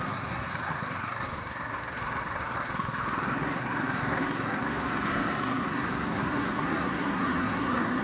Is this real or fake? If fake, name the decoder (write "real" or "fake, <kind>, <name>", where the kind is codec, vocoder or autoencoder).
fake, codec, SNAC